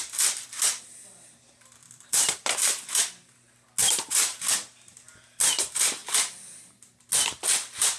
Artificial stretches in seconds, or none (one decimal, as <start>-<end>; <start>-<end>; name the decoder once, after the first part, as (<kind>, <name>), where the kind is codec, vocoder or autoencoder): 1.8-2.9 (vocoder, BigVGAN v2); 3.8-4.5